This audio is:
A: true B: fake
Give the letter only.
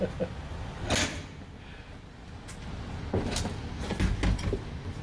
A